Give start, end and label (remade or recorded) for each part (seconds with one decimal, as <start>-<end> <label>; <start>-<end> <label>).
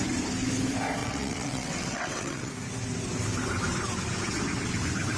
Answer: 0.0-1.0 recorded; 1.0-2.5 remade; 2.5-5.2 recorded